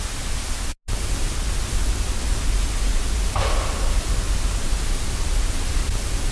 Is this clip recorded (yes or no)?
yes